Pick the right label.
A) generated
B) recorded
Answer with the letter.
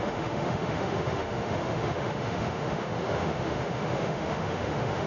A